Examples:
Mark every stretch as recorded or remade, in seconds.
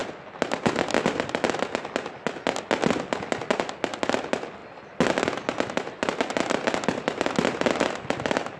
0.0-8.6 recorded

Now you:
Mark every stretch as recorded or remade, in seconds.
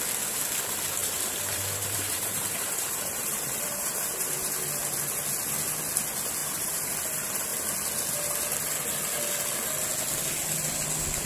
0.0-1.0 recorded; 1.0-4.5 remade; 4.5-6.4 recorded; 6.4-6.9 remade; 6.9-11.3 recorded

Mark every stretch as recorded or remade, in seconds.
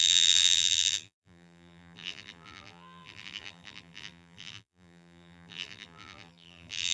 0.0-6.9 remade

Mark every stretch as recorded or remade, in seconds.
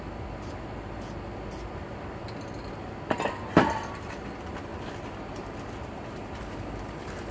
0.0-4.7 recorded; 4.7-7.3 remade